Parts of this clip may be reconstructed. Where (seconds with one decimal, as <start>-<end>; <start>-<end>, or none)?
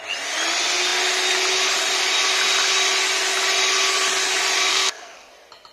4.7-5.3